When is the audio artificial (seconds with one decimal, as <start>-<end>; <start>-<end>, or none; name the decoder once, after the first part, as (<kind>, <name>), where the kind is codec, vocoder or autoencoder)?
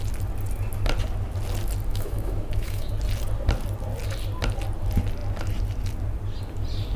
1.9-2.9 (autoencoder, DAC-VAE)